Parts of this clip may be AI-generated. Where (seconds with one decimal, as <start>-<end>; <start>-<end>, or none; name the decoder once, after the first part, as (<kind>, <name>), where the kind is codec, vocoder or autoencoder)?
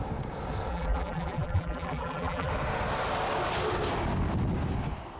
0.7-2.5 (vocoder, BigVGAN v2)